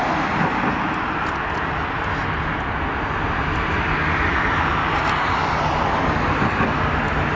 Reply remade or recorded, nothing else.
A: recorded